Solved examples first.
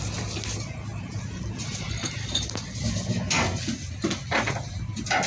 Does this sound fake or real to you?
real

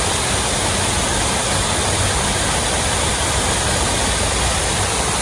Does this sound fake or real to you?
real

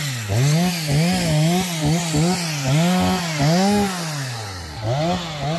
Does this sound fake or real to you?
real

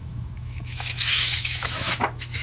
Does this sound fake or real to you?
fake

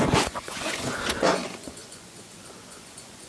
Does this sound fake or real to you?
fake